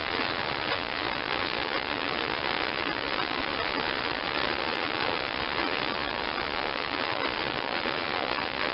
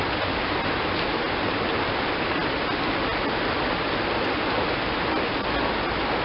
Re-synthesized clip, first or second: first